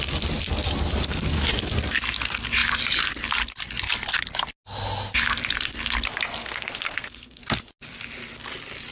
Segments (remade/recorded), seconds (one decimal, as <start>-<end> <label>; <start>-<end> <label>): 0.0-1.0 recorded; 1.0-1.5 remade; 1.5-6.4 recorded; 6.4-7.4 remade; 7.4-8.9 recorded